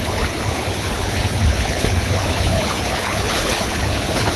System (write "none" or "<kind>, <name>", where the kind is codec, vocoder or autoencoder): codec, HILCodec